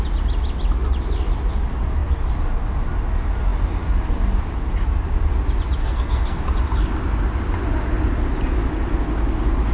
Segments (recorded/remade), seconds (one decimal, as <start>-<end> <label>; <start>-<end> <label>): 0.0-5.8 recorded; 5.8-6.4 remade; 6.4-9.7 recorded